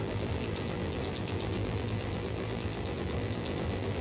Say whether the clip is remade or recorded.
remade